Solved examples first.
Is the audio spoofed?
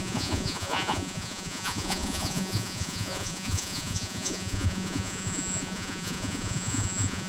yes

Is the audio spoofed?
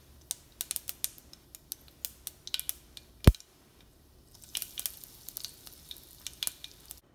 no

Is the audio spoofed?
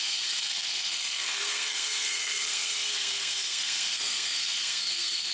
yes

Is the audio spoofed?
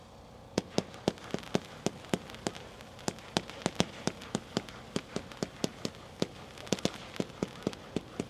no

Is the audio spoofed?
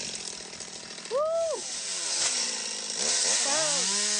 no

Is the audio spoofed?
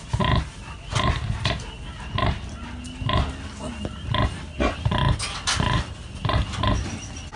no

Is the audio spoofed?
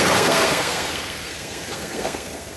yes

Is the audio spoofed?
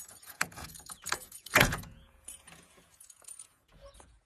yes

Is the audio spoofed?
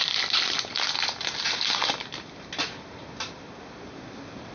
no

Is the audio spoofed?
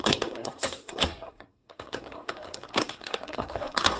yes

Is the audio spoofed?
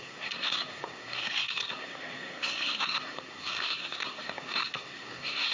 yes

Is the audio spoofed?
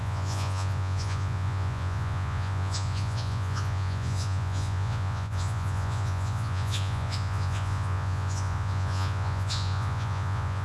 yes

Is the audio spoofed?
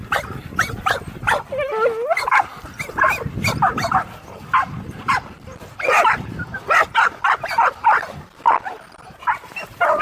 no